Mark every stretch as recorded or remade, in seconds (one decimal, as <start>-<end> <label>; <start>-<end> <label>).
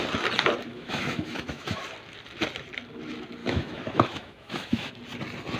0.0-0.7 recorded; 0.7-1.8 remade; 1.8-3.4 recorded; 3.4-4.9 remade; 4.9-5.6 recorded